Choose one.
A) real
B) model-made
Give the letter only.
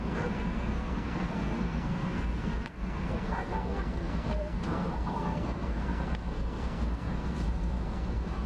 B